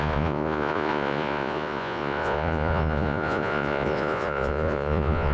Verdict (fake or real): fake